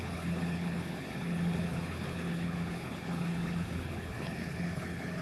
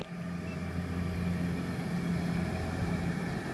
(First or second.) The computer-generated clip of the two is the first